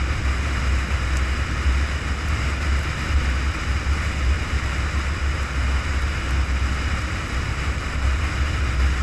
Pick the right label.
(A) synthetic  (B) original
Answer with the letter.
B